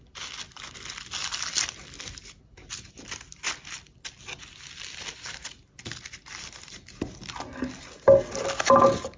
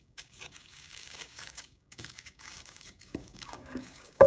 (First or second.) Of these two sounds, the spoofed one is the second